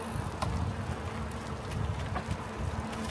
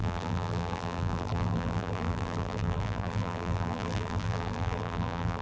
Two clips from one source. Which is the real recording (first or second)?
first